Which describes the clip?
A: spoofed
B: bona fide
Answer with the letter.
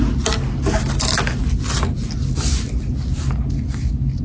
B